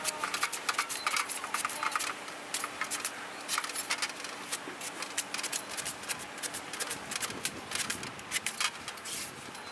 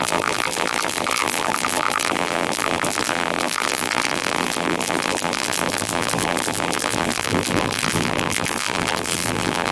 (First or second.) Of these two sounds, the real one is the first